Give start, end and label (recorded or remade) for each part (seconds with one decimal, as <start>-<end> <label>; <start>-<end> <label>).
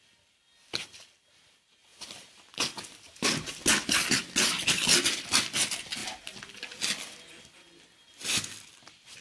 0.0-9.2 recorded